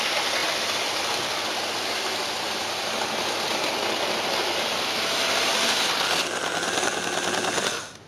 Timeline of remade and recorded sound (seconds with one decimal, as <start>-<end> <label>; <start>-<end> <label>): 0.0-8.1 recorded

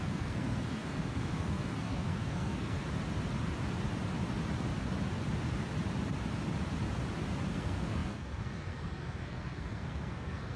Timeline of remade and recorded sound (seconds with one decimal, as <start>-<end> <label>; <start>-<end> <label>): 0.0-2.8 remade; 2.8-7.5 recorded; 7.5-10.6 remade

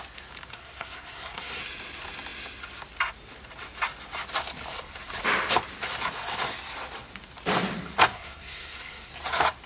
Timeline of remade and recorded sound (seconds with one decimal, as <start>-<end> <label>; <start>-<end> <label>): 0.0-0.5 recorded; 0.5-1.6 remade; 1.6-8.1 recorded; 8.1-9.1 remade; 9.1-9.7 recorded

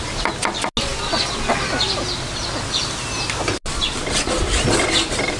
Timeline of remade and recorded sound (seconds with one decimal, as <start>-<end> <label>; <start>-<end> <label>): 0.0-5.4 recorded